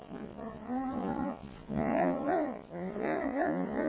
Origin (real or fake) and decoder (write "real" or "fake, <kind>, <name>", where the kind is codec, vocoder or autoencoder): fake, vocoder, Vocos